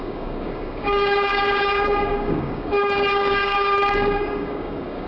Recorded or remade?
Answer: remade